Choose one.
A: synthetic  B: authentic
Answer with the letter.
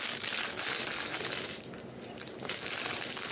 B